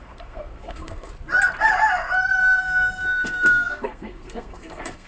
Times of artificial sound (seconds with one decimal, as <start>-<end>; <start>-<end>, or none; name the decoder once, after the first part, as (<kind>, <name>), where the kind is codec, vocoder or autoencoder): 0.0-1.1 (codec, SNAC); 2.4-5.1